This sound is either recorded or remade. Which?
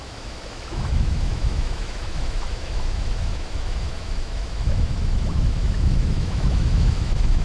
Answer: remade